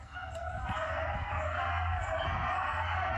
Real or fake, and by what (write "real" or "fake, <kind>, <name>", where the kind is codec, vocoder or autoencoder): fake, codec, SNAC